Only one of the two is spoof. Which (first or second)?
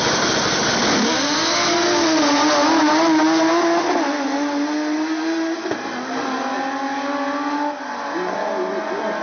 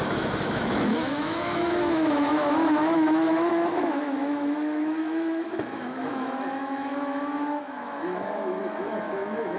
second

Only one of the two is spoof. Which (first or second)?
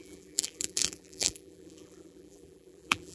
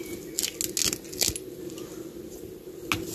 first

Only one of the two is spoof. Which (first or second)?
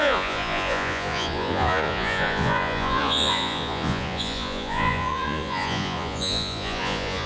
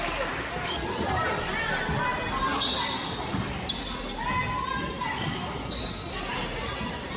first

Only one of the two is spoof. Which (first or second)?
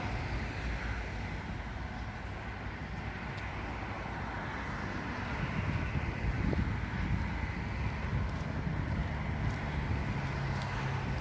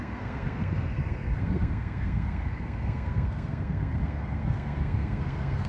second